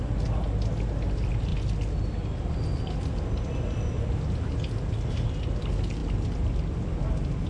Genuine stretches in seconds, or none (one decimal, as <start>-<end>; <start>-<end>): 0.0-7.5